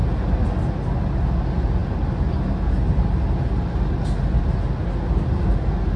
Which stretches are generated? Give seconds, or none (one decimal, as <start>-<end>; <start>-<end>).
none

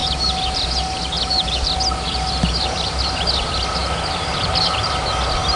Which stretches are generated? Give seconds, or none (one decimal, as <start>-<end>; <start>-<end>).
3.8-4.8

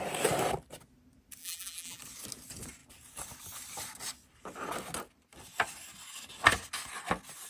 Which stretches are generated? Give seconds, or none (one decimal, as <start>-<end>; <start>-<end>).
1.4-2.0

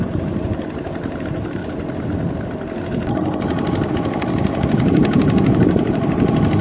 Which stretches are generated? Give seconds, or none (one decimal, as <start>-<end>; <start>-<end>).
0.0-1.6; 3.9-6.6